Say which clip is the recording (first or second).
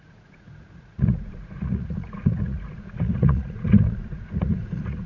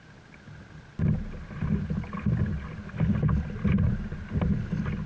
second